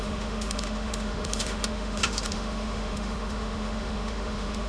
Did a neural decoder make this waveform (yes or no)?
yes